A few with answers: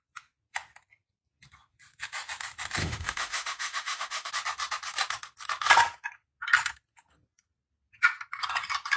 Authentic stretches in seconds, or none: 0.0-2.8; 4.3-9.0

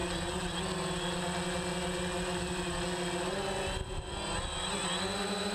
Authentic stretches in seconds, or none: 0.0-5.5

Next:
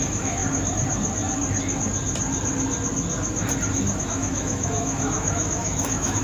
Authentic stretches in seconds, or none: 0.4-4.0